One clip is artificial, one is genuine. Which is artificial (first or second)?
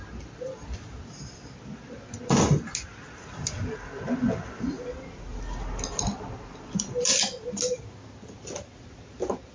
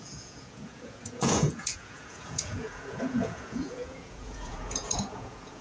second